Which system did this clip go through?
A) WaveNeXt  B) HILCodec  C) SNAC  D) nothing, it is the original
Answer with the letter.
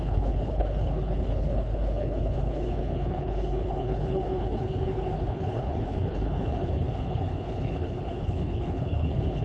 B